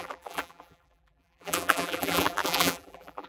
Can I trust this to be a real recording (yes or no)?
no